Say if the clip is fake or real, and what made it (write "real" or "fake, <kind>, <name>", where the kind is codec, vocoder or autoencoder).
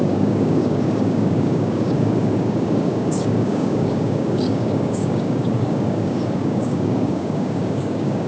fake, codec, DAC